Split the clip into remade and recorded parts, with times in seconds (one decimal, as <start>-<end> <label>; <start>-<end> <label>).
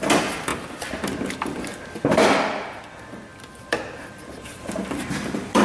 0.0-0.5 recorded; 0.5-1.0 remade; 1.0-3.3 recorded; 3.3-5.6 remade